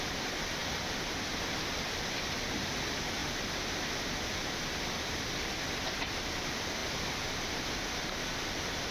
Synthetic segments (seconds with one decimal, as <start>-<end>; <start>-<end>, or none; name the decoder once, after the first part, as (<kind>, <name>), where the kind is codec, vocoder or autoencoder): none